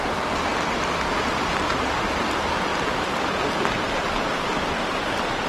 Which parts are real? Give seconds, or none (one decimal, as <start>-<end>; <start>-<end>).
0.5-1.7; 2.7-4.1